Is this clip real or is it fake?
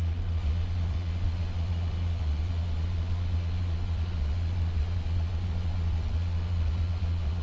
fake